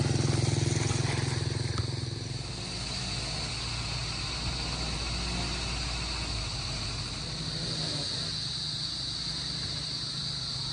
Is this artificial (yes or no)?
no